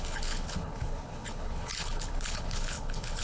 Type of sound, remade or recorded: remade